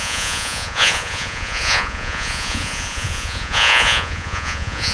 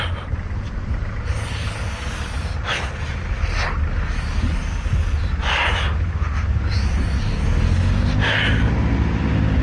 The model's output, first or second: first